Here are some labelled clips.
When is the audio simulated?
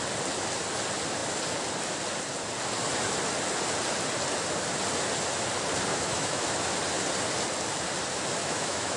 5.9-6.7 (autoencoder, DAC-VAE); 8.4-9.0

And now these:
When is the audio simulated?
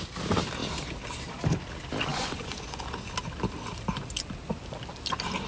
2.1-2.8 (vocoder, Vocos)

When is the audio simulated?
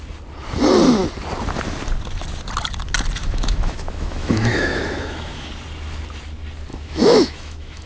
3.2-5.5 (autoencoder, DAC-VAE); 6.7-7.9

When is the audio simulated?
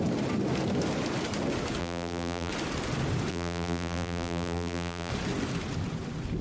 1.8-2.5 (vocoder, BigVGAN v2); 3.3-5.1